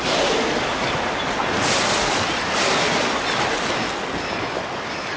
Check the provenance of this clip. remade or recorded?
recorded